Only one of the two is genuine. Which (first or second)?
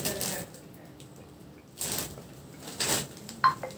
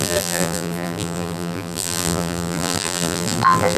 first